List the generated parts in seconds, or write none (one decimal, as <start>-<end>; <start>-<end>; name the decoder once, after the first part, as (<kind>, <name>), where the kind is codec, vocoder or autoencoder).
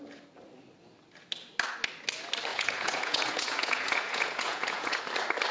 2.5-5.0 (vocoder, Vocos)